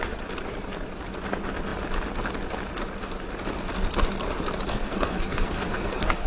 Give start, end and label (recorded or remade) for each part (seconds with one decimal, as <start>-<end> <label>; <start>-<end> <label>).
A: 0.0-4.7 recorded; 4.7-6.3 remade